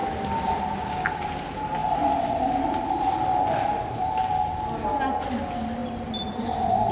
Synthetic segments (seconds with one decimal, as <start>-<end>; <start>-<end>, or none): none